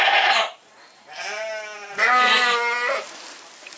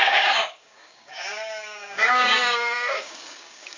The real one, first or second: first